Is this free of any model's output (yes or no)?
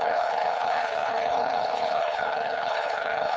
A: no